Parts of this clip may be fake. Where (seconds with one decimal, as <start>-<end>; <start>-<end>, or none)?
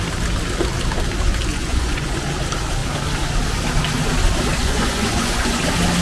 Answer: 1.5-2.2; 4.6-5.6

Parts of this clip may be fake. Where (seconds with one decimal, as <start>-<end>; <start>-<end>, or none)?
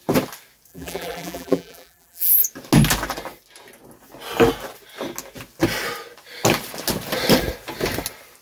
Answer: 0.7-2.3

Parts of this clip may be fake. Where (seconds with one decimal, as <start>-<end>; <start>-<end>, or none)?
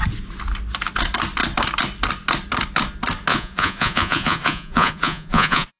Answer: 3.3-5.8